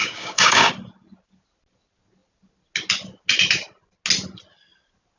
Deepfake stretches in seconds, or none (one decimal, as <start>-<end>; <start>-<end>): 0.0-0.7